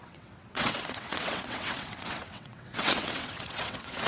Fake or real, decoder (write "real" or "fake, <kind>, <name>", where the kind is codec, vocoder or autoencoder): fake, vocoder, WaveNeXt